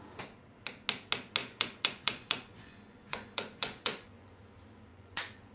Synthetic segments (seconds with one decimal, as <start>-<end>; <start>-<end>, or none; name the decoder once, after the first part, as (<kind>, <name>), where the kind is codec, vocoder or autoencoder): 1.4-4.4 (vocoder, Vocos); 4.9-5.5